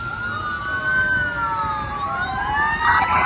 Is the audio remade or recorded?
recorded